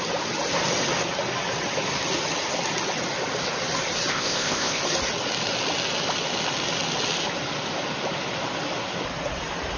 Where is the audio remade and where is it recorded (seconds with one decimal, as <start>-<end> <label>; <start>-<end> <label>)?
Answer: 0.0-4.1 recorded; 4.1-4.8 remade; 4.8-9.8 recorded